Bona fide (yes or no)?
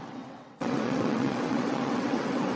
no